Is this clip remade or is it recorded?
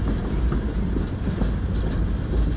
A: recorded